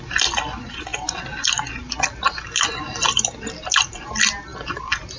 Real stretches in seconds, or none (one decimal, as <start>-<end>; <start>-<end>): 0.0-5.2